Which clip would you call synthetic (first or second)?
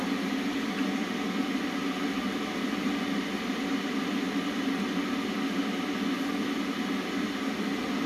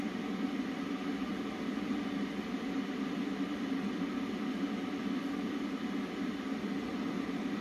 second